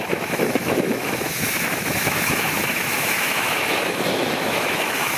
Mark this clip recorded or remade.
remade